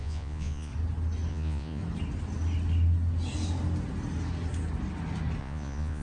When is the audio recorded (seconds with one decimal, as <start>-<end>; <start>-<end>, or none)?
0.7-1.3; 1.8-5.4